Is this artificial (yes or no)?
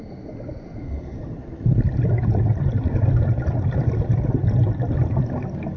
no